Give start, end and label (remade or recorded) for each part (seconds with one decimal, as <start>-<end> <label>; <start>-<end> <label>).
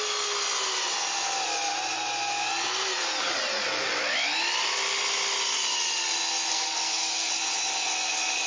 0.0-6.5 recorded; 6.5-7.3 remade; 7.3-8.5 recorded